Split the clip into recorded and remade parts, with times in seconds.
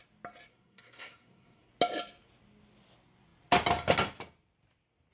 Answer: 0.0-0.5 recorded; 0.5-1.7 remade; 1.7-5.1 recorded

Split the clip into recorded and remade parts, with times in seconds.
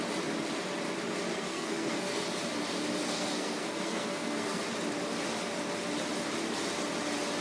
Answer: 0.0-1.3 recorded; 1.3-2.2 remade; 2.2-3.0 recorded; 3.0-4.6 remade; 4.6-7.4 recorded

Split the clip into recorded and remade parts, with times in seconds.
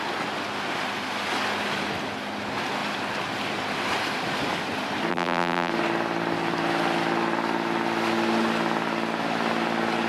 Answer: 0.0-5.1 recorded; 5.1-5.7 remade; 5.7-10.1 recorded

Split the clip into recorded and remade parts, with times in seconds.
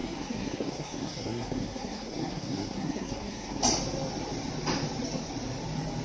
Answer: 0.0-3.6 remade; 3.6-6.0 recorded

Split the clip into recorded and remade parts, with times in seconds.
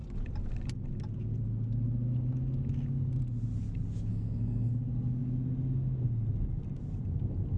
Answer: 0.0-4.1 recorded; 4.1-4.7 remade; 4.7-7.6 recorded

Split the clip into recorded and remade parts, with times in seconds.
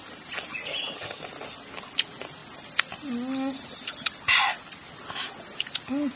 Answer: 0.0-0.7 recorded; 0.7-1.2 remade; 1.2-6.2 recorded